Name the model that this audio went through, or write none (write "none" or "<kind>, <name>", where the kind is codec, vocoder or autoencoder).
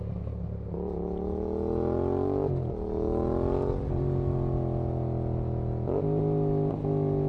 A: none